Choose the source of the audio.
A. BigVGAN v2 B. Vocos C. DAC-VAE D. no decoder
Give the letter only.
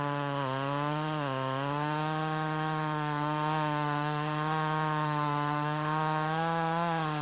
C